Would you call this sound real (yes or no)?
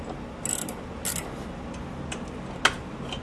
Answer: yes